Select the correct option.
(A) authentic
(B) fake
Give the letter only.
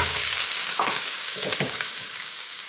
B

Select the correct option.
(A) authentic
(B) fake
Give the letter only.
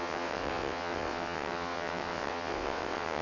B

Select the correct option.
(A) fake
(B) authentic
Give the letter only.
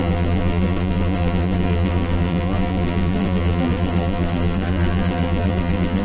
A